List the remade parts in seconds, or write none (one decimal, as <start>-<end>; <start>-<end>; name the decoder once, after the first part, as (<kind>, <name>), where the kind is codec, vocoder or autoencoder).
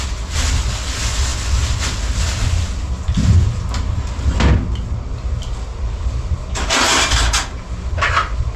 none